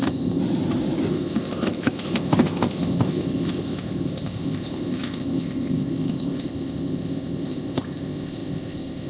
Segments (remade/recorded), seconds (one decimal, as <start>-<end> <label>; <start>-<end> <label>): 0.0-0.4 remade; 0.4-1.1 recorded; 1.1-9.1 remade